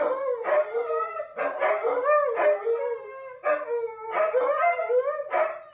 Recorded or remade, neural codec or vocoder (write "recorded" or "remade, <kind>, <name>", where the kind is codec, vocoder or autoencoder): recorded